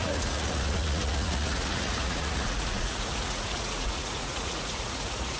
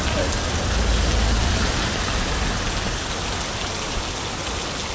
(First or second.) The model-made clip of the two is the first